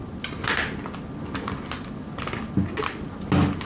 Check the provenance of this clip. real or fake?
real